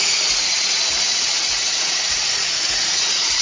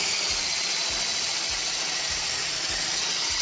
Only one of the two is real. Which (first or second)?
second